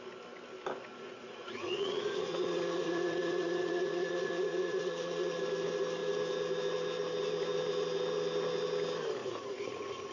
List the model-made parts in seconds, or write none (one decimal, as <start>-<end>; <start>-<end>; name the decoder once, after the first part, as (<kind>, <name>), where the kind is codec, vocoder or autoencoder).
0.9-5.4 (vocoder, Vocos); 9.2-10.1

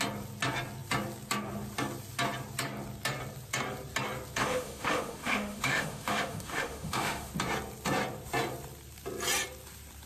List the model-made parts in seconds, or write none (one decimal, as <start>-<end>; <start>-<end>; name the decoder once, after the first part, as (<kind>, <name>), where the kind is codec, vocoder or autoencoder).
4.4-7.3 (autoencoder, DAC-VAE)

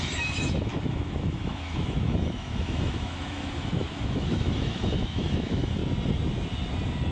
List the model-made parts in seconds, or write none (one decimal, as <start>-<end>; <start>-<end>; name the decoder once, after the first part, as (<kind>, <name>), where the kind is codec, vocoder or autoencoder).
0.0-5.8 (autoencoder, DAC-VAE)

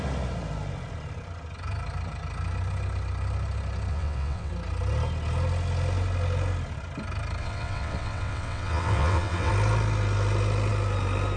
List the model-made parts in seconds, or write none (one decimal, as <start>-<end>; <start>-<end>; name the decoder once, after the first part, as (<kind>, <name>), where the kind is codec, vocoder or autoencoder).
3.9-4.5 (vocoder, WaveNeXt); 7.4-9.5

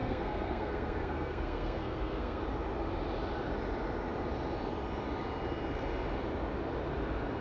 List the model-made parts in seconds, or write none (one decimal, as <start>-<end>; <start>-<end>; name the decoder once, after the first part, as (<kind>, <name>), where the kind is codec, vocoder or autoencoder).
0.0-2.4 (codec, SNAC)

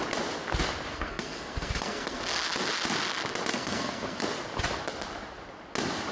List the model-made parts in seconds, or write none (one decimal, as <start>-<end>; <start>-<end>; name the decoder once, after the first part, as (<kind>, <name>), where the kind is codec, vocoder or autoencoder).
0.9-2.2 (codec, SNAC); 3.5-4.2